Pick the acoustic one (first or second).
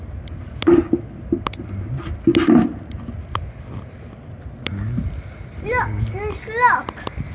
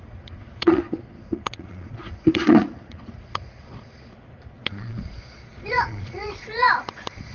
first